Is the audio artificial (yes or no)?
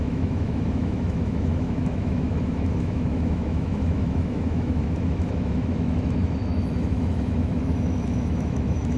yes